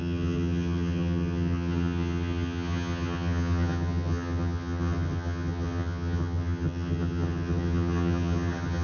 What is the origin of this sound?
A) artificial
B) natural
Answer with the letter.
A